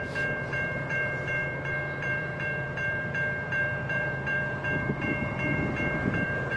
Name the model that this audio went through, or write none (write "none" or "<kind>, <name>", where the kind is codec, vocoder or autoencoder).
vocoder, BigVGAN v2